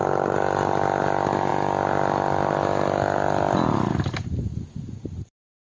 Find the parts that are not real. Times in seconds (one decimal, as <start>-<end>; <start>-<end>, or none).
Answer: none